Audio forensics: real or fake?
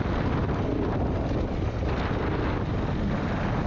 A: real